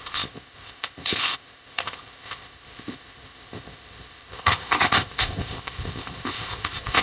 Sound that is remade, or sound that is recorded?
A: remade